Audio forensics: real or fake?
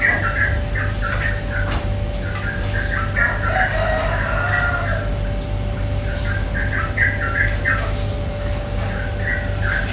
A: real